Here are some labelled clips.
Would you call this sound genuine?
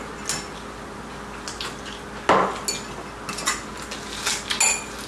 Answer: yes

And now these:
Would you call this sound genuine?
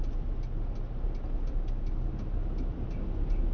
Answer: yes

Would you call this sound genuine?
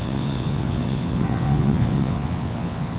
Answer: no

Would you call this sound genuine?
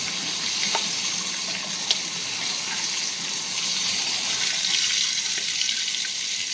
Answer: yes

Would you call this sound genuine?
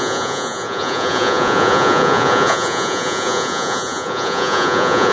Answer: no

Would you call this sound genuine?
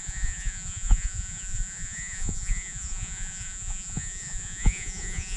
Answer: no